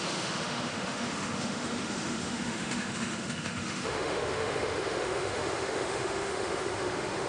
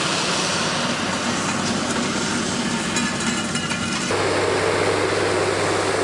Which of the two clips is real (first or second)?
second